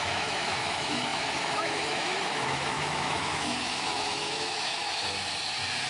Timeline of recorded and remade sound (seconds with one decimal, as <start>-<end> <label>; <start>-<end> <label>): 0.0-4.8 remade; 4.8-5.9 recorded